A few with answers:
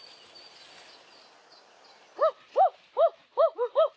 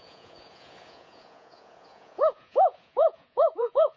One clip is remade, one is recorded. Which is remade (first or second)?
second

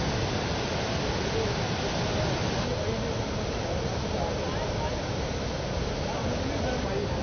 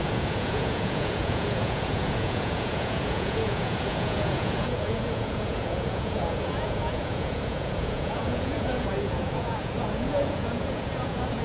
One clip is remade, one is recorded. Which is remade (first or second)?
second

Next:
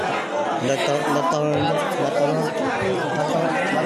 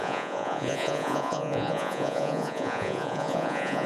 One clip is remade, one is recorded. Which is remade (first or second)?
second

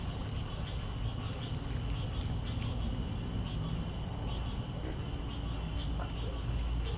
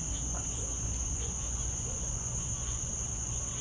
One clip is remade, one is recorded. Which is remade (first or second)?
second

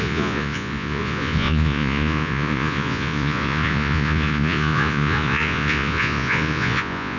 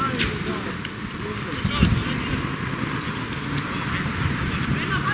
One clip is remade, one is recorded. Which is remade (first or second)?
first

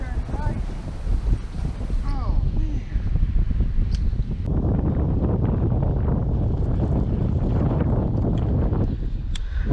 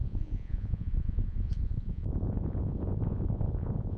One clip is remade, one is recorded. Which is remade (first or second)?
second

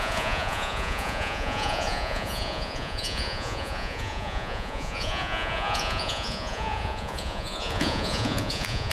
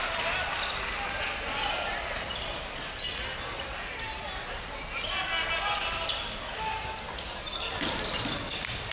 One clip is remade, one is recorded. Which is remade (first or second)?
first